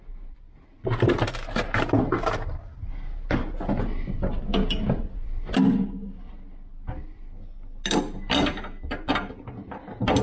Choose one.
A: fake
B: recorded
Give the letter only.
B